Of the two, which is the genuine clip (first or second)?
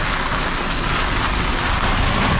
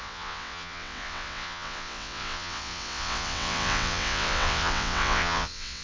first